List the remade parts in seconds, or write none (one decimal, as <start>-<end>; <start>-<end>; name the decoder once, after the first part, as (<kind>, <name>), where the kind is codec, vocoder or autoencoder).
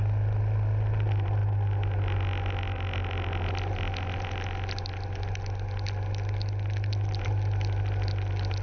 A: none